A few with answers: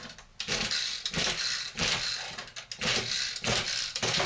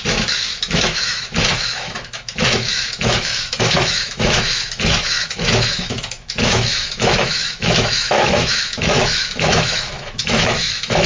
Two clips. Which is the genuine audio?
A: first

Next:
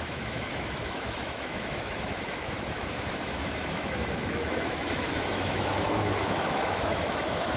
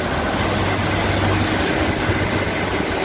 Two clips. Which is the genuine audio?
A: second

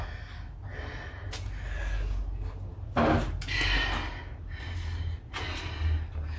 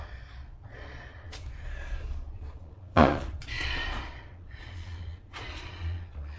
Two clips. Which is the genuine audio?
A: first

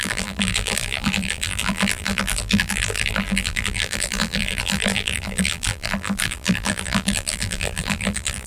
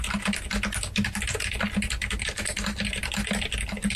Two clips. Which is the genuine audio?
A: second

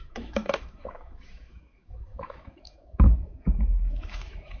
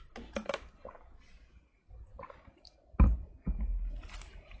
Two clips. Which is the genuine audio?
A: second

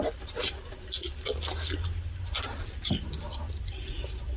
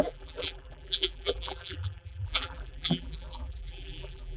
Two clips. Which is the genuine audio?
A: first